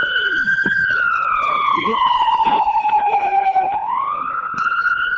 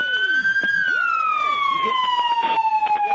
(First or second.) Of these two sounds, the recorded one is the second